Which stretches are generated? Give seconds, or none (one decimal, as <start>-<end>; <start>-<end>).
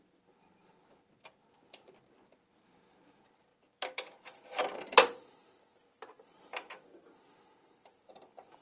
none